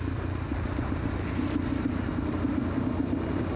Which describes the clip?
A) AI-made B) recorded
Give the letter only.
B